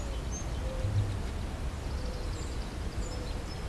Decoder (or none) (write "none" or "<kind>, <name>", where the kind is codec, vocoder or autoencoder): none